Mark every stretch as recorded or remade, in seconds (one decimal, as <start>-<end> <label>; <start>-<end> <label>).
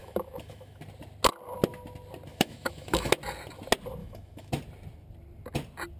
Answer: 0.0-0.8 remade; 0.8-2.3 recorded; 2.3-3.1 remade; 3.1-4.0 recorded; 4.0-4.5 remade; 4.5-6.0 recorded